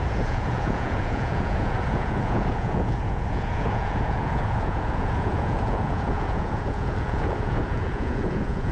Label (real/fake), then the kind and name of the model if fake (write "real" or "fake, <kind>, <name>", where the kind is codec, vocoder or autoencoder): fake, vocoder, Vocos